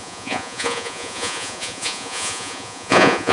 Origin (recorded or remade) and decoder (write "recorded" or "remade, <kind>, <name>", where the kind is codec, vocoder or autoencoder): remade, vocoder, Vocos